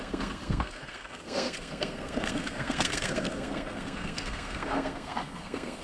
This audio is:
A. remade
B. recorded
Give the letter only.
A